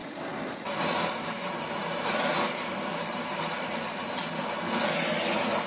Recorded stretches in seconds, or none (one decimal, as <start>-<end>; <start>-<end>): 3.4-5.7